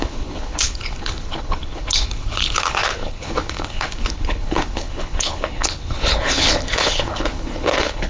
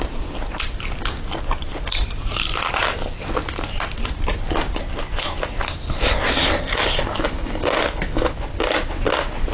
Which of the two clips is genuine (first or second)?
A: second